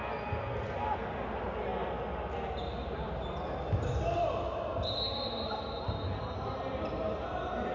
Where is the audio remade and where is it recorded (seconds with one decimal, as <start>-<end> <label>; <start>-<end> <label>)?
0.0-7.7 recorded